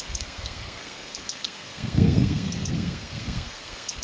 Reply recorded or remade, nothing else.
remade